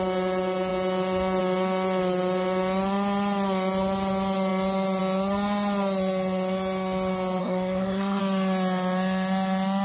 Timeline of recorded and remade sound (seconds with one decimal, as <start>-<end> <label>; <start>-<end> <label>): 0.0-7.4 recorded; 7.4-8.2 remade; 8.2-9.8 recorded